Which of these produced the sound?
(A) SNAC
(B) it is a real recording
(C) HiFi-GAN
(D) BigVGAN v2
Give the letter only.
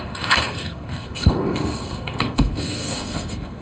A